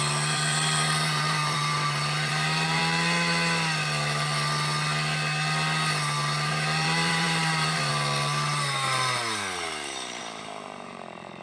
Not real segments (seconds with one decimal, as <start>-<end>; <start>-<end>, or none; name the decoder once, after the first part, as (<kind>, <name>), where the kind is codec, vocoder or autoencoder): 0.0-2.8 (vocoder, BigVGAN v2); 6.5-7.9; 10.2-11.4